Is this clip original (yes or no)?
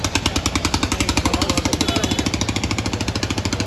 yes